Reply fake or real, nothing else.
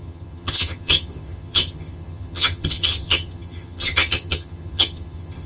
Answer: fake